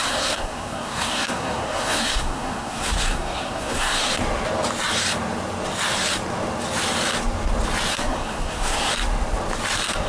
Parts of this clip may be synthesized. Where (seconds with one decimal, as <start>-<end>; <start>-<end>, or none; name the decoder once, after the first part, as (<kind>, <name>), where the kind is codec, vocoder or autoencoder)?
0.0-4.1 (codec, SNAC); 7.9-8.9